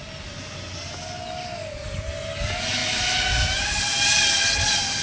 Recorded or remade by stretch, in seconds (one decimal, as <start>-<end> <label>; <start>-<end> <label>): 0.0-5.0 recorded